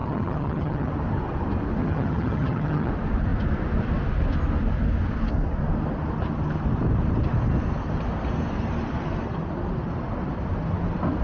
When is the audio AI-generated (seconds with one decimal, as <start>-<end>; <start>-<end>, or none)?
0.0-0.9; 1.8-2.9